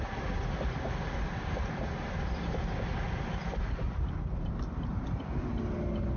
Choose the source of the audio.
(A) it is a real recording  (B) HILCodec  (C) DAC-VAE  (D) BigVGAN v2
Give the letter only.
A